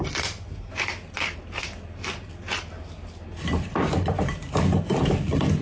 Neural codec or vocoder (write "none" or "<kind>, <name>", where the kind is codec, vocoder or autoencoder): none